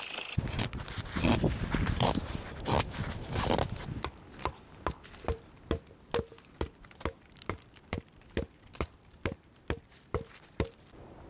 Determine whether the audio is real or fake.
fake